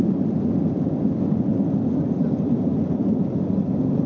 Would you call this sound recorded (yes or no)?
yes